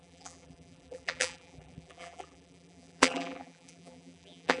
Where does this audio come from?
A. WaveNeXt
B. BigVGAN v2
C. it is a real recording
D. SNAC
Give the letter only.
B